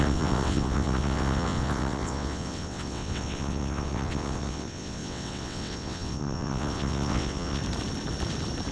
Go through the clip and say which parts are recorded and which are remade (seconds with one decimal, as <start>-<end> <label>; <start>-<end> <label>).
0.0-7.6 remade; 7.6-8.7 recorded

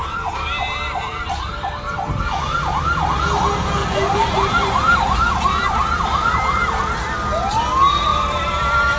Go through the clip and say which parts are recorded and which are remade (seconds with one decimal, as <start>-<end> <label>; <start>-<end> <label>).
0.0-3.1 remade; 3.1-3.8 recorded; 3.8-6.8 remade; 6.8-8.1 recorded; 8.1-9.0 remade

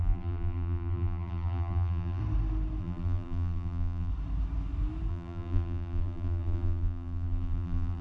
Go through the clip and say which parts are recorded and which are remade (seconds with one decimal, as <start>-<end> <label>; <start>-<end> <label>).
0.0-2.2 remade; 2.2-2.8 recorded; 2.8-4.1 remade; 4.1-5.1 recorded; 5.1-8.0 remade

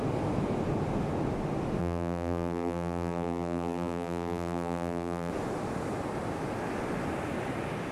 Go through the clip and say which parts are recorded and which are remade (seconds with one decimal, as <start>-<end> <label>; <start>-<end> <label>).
0.0-1.8 recorded; 1.8-5.3 remade; 5.3-7.9 recorded